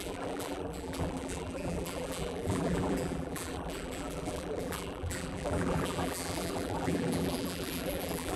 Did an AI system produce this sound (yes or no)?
yes